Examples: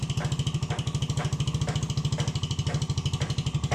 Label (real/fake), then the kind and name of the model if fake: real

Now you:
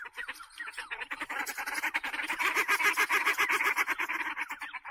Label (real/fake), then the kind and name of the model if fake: fake, vocoder, BigVGAN v2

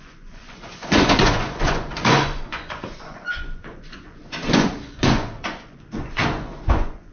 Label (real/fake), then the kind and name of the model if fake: fake, vocoder, Vocos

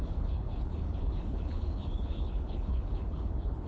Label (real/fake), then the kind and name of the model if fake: fake, codec, HILCodec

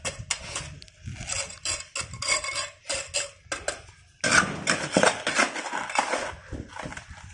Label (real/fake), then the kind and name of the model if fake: real